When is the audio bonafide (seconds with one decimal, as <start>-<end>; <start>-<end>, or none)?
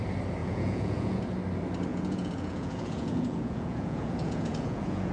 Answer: 0.0-0.4; 1.2-1.9